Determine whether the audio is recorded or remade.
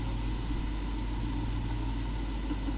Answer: recorded